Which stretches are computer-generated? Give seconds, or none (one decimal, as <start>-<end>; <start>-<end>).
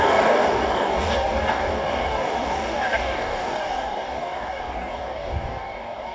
0.0-6.1